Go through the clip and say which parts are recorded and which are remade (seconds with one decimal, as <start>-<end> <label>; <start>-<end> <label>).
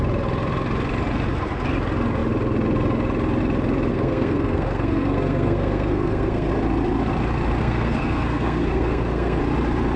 0.0-3.9 recorded; 3.9-6.5 remade; 6.5-7.6 recorded; 7.6-9.4 remade; 9.4-10.0 recorded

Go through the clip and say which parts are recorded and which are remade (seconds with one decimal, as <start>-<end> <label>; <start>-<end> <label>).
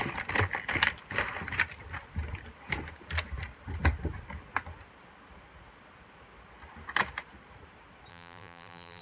0.0-8.1 recorded; 8.1-9.0 remade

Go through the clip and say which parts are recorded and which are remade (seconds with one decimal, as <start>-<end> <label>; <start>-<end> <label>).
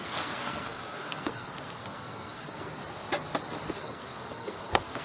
0.0-2.8 remade; 2.8-3.7 recorded; 3.7-5.0 remade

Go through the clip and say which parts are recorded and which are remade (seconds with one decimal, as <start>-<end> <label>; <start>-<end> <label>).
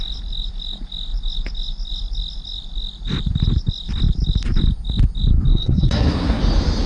0.0-5.5 recorded; 5.5-6.4 remade; 6.4-6.9 recorded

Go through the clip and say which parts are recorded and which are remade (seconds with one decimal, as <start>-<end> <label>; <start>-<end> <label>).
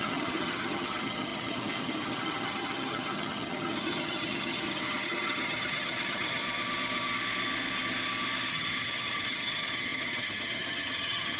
0.0-6.4 remade; 6.4-8.5 recorded; 8.5-11.4 remade